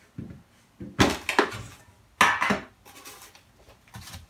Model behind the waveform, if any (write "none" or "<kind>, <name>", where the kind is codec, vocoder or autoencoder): none